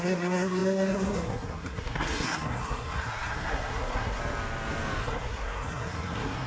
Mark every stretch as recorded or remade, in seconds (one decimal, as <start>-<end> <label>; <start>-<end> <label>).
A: 0.0-4.2 remade; 4.2-5.0 recorded; 5.0-6.5 remade